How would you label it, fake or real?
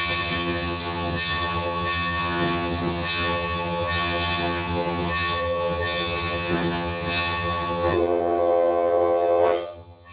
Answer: fake